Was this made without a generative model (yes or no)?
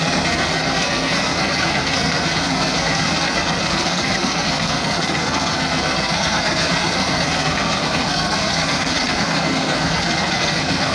no